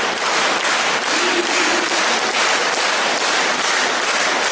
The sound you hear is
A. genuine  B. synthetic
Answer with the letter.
A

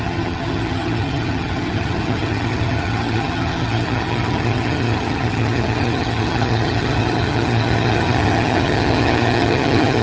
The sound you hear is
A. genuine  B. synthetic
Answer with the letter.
B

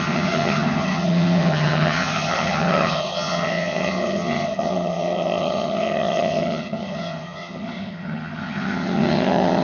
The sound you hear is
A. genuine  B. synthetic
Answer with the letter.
B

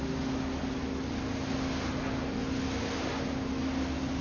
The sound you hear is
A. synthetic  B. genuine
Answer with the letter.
B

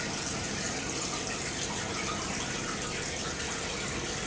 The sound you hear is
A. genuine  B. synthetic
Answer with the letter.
A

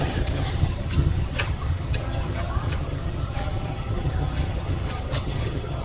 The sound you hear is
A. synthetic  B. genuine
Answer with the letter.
A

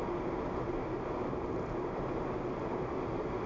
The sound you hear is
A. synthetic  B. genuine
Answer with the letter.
B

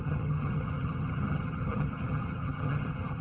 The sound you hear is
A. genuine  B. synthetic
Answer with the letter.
B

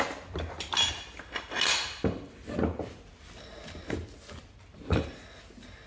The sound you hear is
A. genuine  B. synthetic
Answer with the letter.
A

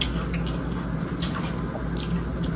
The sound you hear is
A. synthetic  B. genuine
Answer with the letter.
B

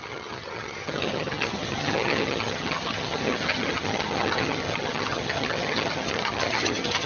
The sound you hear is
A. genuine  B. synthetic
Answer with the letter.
B